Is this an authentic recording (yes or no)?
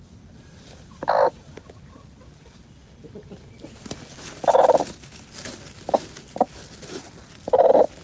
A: yes